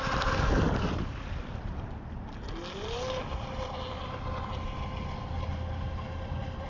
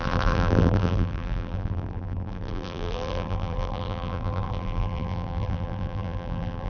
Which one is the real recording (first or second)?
first